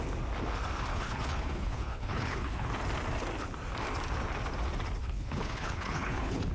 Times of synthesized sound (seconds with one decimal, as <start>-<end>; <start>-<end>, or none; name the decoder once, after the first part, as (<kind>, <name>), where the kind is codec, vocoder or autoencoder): 0.9-2.7 (codec, HILCodec); 5.0-6.5